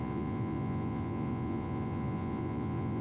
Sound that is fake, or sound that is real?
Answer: fake